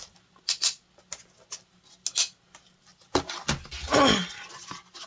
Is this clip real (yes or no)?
yes